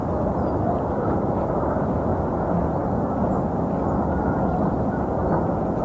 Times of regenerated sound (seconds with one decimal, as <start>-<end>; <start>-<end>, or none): 0.9-2.1